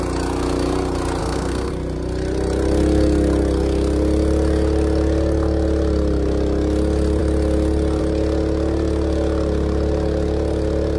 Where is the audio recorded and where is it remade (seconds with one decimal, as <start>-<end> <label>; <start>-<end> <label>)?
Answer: 0.0-1.2 recorded; 1.2-1.7 remade; 1.7-11.0 recorded